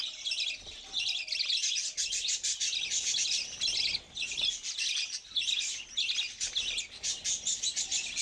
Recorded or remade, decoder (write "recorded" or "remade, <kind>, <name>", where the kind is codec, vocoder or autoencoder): recorded